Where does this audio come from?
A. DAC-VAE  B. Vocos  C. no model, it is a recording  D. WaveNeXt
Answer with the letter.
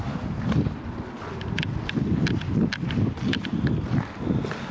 C